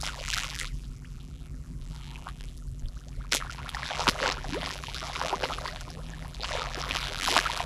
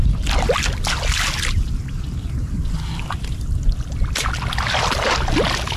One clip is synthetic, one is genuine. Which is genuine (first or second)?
second